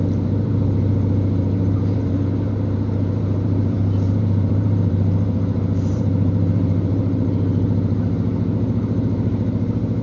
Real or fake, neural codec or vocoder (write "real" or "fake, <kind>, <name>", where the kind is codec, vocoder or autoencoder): fake, vocoder, BigVGAN v2